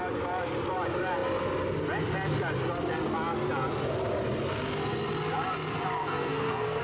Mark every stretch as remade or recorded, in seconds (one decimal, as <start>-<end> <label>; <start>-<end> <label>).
0.0-6.0 recorded; 6.0-6.8 remade